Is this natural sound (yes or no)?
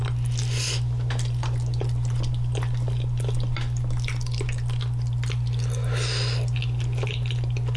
yes